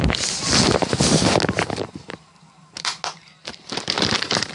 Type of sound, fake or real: real